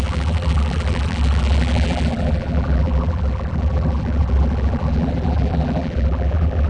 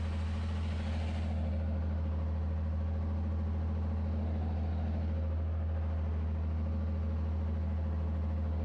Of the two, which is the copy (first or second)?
first